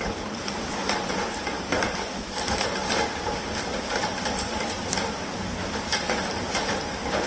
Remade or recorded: recorded